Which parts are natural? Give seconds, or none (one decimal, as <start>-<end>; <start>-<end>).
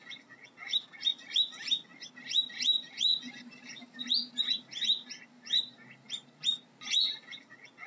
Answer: 0.0-7.9